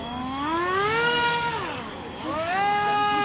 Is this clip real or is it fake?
fake